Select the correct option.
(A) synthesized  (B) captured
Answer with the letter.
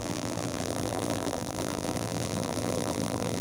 A